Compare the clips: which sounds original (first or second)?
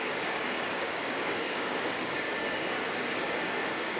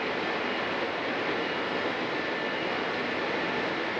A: second